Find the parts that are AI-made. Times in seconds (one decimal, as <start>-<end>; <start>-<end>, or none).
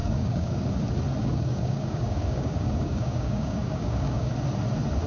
0.0-0.6; 1.2-4.3